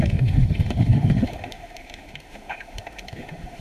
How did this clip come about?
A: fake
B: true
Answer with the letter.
A